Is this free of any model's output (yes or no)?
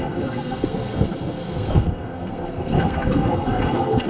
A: no